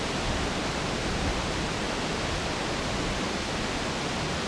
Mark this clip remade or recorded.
recorded